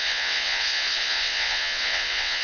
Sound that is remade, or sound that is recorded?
remade